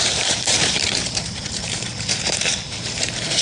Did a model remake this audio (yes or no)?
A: yes